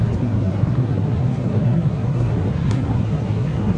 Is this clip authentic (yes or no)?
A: no